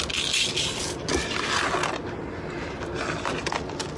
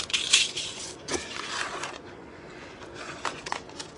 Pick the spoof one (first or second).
second